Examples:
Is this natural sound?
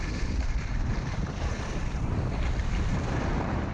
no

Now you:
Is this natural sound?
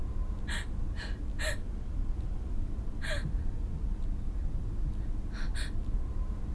yes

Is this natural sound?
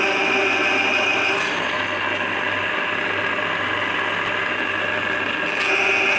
yes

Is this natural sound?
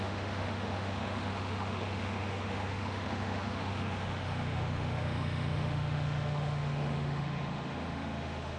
no